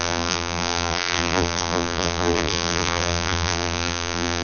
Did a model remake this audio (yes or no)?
yes